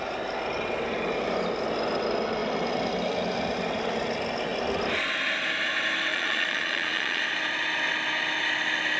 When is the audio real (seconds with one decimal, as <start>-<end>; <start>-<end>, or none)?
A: 0.0-6.1; 7.2-9.0